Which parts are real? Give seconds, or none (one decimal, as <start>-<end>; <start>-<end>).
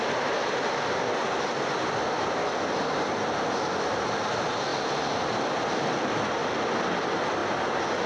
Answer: 0.0-8.1